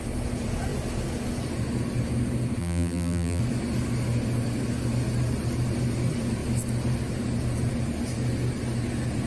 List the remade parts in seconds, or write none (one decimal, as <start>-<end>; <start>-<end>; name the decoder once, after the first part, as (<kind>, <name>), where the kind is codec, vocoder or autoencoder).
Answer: 2.6-3.4 (vocoder, BigVGAN v2)